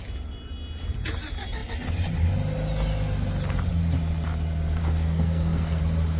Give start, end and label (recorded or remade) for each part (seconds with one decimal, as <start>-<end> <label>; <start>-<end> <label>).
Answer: 0.0-4.8 recorded; 4.8-5.8 remade; 5.8-6.2 recorded